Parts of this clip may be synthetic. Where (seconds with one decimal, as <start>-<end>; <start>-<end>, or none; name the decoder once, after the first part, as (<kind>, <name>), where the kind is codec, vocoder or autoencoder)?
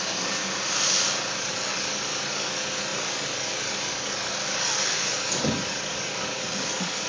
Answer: 0.0-0.4 (codec, DAC); 1.5-7.1